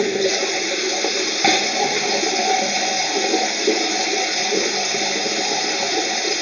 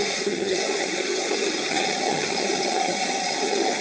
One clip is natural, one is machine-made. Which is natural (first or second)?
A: first